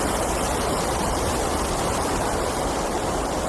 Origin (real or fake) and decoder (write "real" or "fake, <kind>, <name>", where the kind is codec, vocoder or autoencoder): fake, vocoder, BigVGAN v2